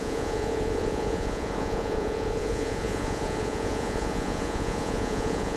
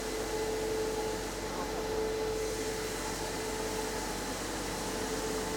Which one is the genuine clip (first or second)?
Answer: second